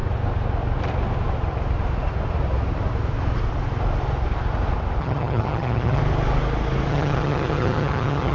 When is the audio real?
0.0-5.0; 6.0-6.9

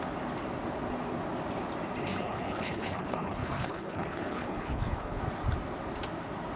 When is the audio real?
0.0-2.2; 5.2-6.6